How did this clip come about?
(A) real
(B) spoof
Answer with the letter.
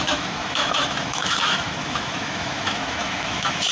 B